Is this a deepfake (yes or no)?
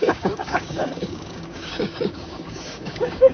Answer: yes